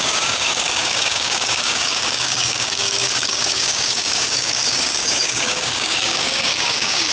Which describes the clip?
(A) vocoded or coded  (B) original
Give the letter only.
A